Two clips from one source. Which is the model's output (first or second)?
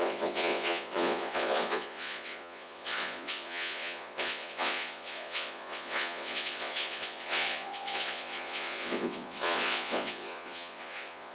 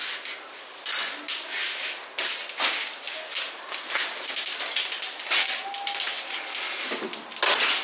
first